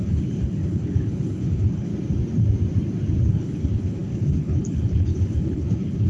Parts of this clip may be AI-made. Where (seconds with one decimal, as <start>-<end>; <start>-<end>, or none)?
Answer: 0.0-1.9; 3.3-6.1